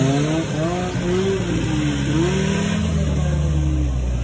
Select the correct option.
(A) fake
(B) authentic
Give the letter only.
B